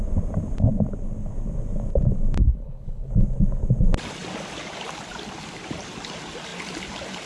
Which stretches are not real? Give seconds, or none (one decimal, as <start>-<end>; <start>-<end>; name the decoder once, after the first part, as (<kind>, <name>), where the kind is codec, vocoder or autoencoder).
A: 2.5-3.1 (codec, HILCodec)